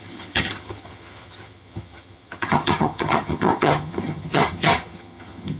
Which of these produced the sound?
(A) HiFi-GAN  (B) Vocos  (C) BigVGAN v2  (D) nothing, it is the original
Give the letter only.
A